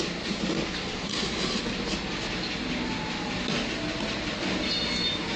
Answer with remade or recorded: recorded